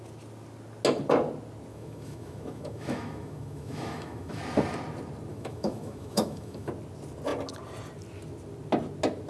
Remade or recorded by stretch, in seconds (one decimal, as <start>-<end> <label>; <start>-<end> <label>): 0.0-1.7 recorded; 1.7-4.4 remade; 4.4-5.3 recorded; 5.3-6.7 remade; 6.7-9.3 recorded